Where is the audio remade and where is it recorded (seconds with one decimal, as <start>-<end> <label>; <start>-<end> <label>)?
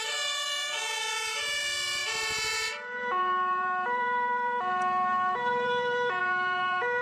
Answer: 0.0-7.0 remade